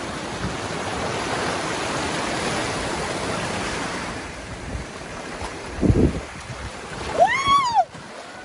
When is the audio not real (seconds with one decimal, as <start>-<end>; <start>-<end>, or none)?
2.6-7.6